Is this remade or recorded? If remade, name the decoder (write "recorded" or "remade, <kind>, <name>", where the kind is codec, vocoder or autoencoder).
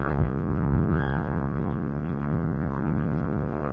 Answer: remade, vocoder, Vocos